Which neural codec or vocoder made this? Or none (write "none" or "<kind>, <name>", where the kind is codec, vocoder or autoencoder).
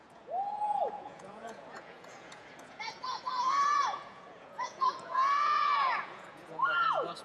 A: vocoder, Vocos